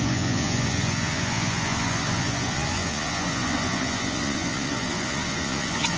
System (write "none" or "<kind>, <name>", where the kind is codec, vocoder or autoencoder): vocoder, Vocos